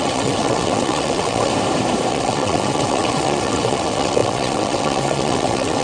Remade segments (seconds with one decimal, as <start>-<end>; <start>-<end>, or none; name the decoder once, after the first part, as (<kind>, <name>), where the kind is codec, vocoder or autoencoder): 0.0-1.5 (vocoder, WaveNeXt); 2.1-5.8